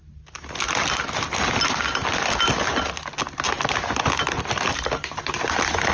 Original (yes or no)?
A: yes